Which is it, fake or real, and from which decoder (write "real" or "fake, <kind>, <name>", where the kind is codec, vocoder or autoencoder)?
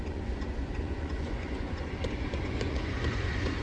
fake, vocoder, Vocos